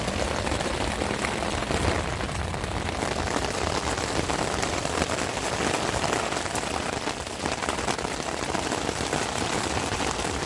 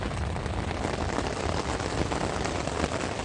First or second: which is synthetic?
first